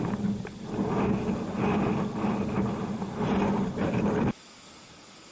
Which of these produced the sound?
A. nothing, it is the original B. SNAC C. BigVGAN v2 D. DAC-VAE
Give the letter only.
A